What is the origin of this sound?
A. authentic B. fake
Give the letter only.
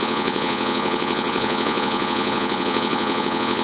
B